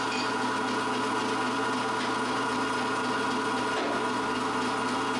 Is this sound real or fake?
real